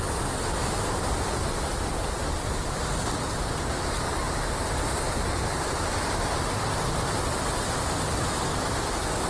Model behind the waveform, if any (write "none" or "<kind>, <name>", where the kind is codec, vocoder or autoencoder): none